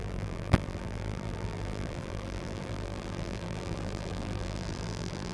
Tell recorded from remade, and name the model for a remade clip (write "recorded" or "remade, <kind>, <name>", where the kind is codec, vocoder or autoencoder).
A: remade, vocoder, BigVGAN v2